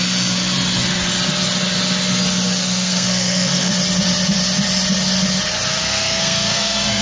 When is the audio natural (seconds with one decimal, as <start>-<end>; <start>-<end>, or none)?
0.0-2.6; 3.7-5.8